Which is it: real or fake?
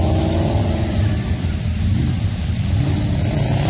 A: fake